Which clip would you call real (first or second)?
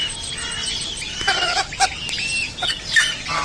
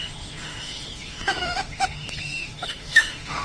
first